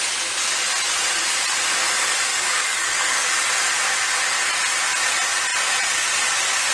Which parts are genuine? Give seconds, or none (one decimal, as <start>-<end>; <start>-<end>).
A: 0.0-2.3; 3.3-6.7